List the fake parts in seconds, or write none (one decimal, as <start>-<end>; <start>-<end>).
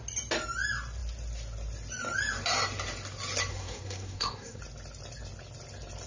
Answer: 3.5-4.6